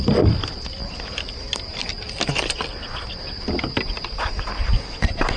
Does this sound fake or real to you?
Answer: real